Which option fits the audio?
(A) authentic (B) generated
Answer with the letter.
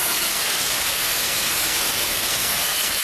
B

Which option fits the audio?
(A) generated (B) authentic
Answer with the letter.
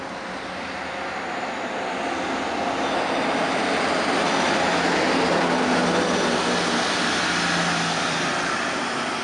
B